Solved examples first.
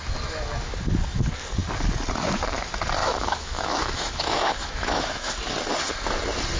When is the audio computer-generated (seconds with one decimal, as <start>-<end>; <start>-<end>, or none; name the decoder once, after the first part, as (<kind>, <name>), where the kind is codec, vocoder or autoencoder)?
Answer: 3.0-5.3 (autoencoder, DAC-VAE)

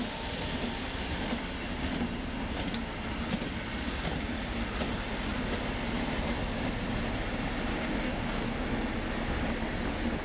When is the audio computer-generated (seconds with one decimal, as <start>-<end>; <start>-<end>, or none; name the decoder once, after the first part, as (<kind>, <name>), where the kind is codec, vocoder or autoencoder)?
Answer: 7.7-8.6 (codec, DAC)

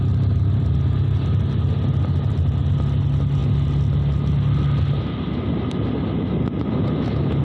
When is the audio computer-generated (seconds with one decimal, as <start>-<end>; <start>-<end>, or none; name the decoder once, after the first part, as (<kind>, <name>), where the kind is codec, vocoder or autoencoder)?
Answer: none

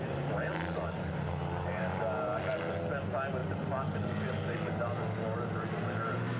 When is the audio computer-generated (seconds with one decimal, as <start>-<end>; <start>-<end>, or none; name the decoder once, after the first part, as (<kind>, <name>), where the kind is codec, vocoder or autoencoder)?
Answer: none